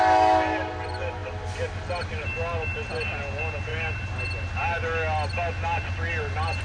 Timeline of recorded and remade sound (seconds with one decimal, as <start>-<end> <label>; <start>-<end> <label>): 0.0-6.6 recorded